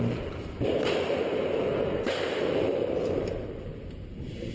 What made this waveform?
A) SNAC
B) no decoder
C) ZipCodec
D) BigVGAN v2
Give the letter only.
D